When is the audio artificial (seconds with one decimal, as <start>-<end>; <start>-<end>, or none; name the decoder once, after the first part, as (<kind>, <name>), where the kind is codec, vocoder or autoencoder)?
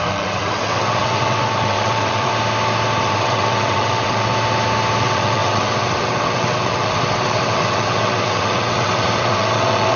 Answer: 0.0-2.3 (vocoder, WaveNeXt); 3.0-4.3; 5.0-10.0